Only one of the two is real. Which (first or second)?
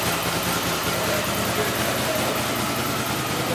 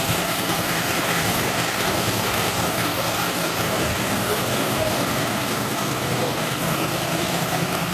first